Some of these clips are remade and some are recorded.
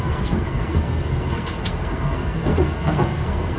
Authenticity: remade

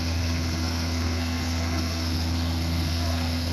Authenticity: remade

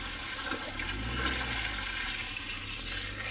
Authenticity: recorded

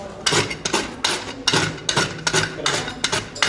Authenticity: recorded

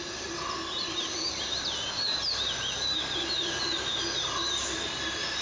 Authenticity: recorded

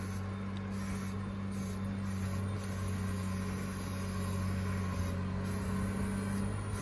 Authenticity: recorded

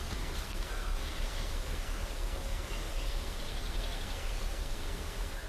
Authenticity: remade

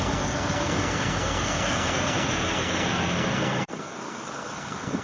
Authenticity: remade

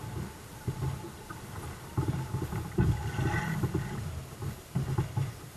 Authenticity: recorded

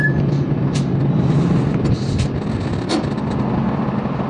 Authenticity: recorded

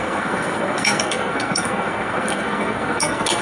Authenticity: remade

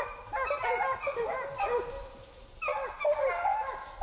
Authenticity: recorded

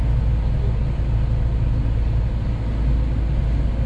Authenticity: recorded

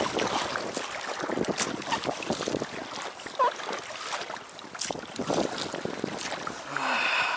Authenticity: recorded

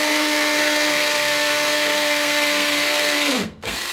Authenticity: remade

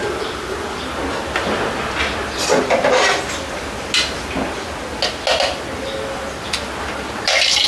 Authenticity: recorded